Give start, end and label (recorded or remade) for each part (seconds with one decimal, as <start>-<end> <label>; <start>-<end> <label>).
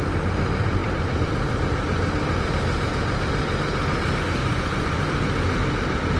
0.0-4.4 recorded; 4.4-5.0 remade; 5.0-6.2 recorded